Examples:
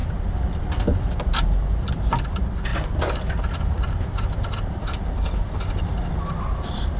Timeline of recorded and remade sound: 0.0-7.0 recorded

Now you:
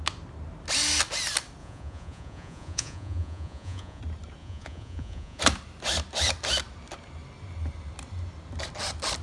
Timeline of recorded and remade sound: 0.0-1.6 recorded; 1.6-4.0 remade; 4.0-4.4 recorded; 4.4-5.4 remade; 5.4-9.2 recorded

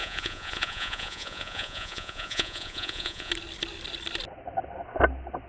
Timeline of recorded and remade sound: 0.0-3.3 remade; 3.3-5.5 recorded

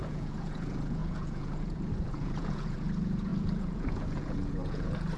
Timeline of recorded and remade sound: 0.0-5.2 remade

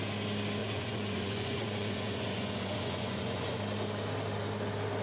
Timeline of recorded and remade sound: 0.0-0.6 recorded; 0.6-3.6 remade; 3.6-5.0 recorded